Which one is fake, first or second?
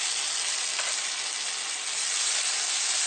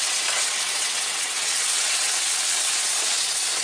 second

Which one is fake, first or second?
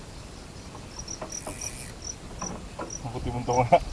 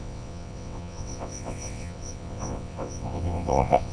second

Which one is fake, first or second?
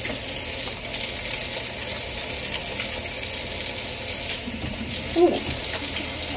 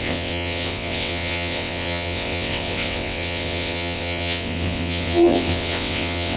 second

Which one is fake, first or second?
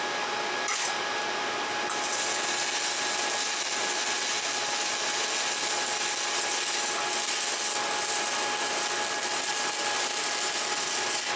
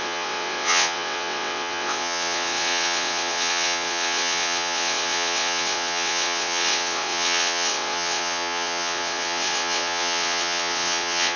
second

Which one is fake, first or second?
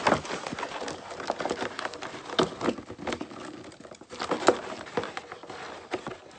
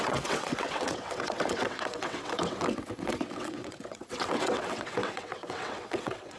second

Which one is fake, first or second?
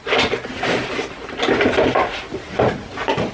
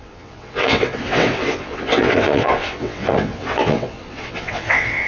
second